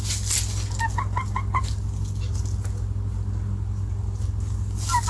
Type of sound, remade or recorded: recorded